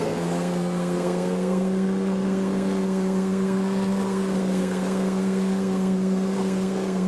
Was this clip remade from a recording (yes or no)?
yes